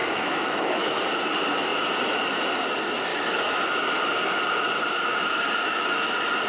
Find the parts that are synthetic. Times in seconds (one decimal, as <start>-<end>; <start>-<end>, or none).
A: 0.0-1.0; 3.1-3.6; 5.1-6.1